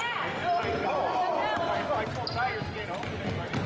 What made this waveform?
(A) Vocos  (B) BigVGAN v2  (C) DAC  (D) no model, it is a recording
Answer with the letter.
D